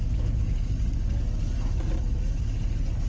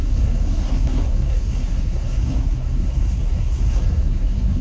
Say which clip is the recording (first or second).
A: first